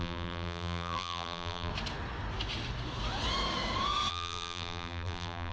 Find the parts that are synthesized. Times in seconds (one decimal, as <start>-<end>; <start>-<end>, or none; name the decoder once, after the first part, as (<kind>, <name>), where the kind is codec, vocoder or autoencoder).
0.0-1.7 (vocoder, BigVGAN v2); 4.1-5.5